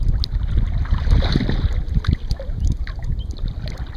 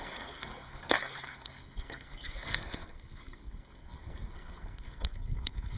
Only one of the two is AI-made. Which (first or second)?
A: second